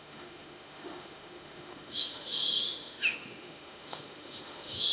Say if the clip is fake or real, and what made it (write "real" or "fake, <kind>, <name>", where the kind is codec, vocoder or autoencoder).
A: fake, autoencoder, DAC-VAE